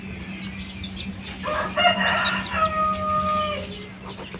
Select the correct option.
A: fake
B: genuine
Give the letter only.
B